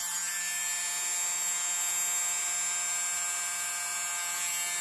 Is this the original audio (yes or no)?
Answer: yes